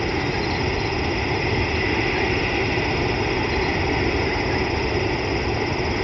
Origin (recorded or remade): recorded